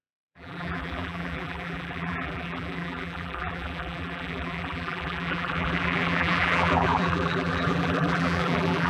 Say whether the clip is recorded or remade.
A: remade